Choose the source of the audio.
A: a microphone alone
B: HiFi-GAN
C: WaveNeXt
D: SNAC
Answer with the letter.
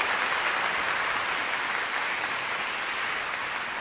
A